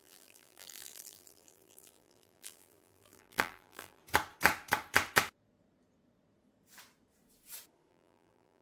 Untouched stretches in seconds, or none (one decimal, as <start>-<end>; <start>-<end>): 4.0-7.9